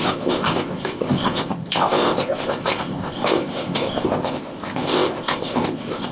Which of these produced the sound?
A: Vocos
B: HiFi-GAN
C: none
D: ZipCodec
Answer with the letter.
D